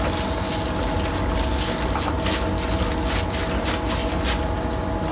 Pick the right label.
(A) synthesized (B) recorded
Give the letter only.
B